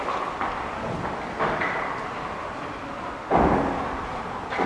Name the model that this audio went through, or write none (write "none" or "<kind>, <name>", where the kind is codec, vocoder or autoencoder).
none